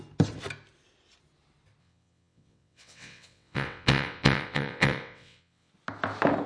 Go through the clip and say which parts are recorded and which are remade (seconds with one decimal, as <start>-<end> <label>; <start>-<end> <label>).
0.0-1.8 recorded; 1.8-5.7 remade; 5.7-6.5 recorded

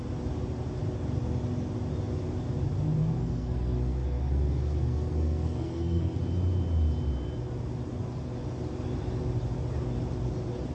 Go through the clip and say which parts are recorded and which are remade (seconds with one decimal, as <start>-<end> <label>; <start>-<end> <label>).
0.0-3.0 recorded; 3.0-6.2 remade; 6.2-10.7 recorded

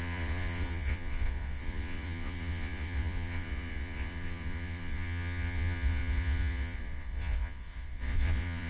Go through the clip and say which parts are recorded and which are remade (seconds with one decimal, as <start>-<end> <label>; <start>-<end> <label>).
0.0-8.7 remade